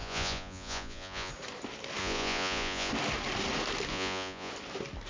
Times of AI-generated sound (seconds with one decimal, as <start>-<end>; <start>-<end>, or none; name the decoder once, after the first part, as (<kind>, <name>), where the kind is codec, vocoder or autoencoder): 0.0-1.3 (vocoder, Vocos); 2.0-2.9; 3.9-4.5